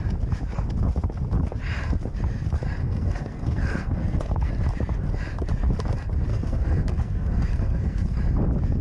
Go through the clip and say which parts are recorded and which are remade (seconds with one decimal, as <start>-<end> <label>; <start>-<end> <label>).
0.0-2.8 recorded; 2.8-4.5 remade; 4.5-6.3 recorded; 6.3-8.2 remade; 8.2-8.8 recorded